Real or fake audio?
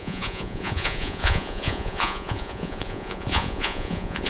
fake